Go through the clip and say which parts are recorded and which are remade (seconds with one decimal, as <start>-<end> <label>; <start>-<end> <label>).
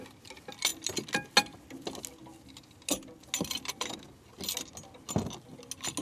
0.0-6.0 recorded